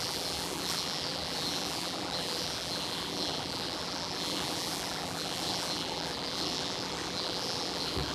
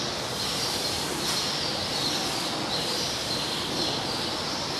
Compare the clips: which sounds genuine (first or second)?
second